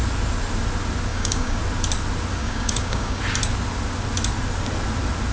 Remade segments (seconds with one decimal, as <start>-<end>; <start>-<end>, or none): 1.1-1.6; 2.4-3.2